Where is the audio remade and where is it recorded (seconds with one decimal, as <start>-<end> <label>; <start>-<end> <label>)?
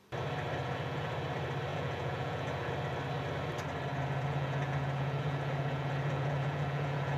0.0-0.6 recorded; 0.6-1.1 remade; 1.1-1.7 recorded; 1.7-2.7 remade; 2.7-3.9 recorded; 3.9-7.2 remade